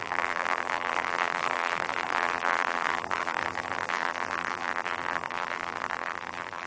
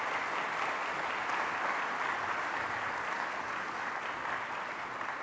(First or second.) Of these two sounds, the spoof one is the first